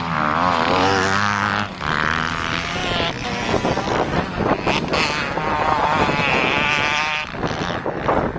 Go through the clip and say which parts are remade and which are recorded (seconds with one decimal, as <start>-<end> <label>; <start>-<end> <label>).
0.0-8.4 recorded